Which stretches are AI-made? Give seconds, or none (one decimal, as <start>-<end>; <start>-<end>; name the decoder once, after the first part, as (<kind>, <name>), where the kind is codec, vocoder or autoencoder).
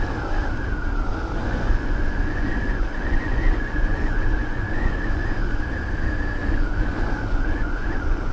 1.4-5.5 (vocoder, Vocos); 6.4-8.3